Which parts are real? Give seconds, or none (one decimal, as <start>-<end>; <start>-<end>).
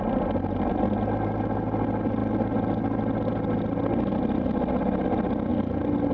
0.0-6.1